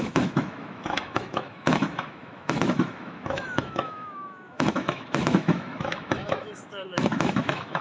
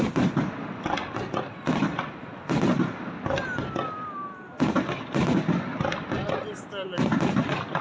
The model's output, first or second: first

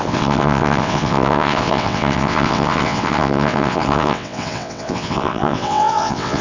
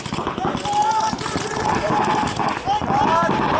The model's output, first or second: first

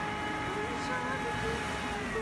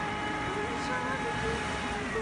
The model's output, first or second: second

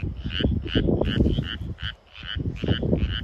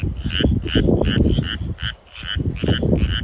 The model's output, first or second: second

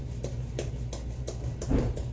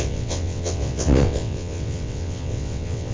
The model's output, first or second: second